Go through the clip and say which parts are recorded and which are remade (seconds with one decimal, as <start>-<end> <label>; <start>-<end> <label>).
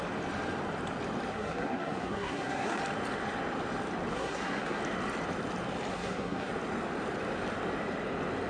0.0-1.3 recorded; 1.3-2.8 remade; 2.8-4.1 recorded; 4.1-4.8 remade; 4.8-5.9 recorded; 5.9-6.5 remade; 6.5-8.5 recorded